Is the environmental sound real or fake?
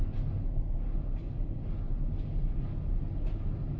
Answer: real